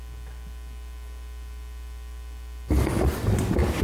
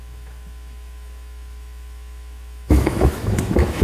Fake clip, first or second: second